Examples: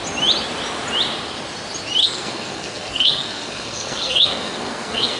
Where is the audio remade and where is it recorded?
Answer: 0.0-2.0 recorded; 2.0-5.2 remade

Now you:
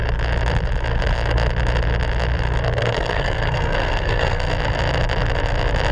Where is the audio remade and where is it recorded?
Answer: 0.0-2.8 recorded; 2.8-4.5 remade; 4.5-5.9 recorded